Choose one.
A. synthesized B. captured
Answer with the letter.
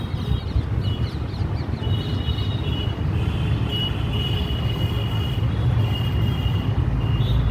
B